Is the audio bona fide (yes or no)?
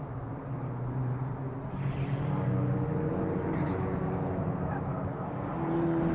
yes